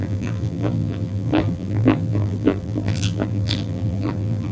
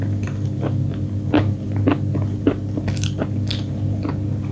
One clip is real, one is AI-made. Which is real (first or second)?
second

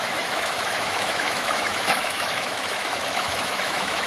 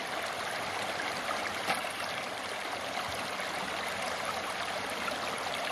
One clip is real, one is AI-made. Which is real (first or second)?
second